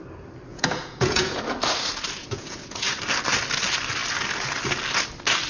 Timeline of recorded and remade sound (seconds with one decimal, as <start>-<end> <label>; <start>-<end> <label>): 0.0-0.5 recorded; 0.5-1.4 remade; 1.4-2.2 recorded; 2.2-2.9 remade; 2.9-5.5 recorded